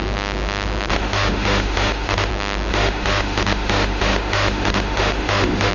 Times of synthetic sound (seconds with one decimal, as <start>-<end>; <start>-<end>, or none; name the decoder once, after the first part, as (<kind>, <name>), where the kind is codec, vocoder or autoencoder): 0.9-2.3 (autoencoder, DAC-VAE); 2.7-5.7